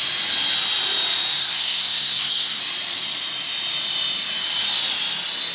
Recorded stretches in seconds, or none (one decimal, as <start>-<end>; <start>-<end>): 0.0-1.4; 2.6-5.5